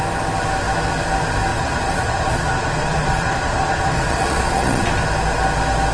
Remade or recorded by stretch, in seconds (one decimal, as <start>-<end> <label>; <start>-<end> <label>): 0.0-1.5 recorded; 1.5-5.0 remade; 5.0-5.9 recorded